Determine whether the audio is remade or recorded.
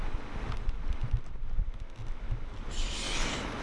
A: remade